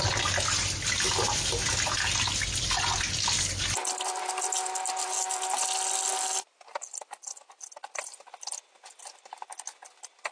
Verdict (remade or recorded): recorded